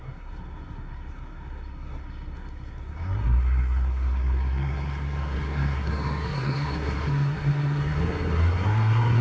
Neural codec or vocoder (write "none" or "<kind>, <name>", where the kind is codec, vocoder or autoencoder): codec, SNAC